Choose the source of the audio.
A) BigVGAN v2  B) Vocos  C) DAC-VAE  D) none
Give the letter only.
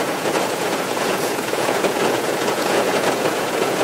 B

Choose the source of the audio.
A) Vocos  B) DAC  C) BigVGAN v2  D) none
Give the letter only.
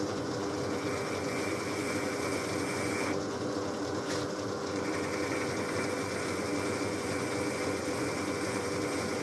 A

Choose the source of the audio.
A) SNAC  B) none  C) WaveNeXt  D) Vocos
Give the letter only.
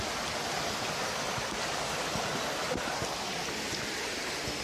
B